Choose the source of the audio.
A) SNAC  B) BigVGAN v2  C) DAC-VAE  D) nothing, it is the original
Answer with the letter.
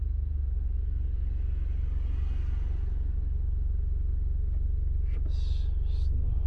D